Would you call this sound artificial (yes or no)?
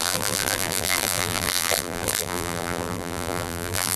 yes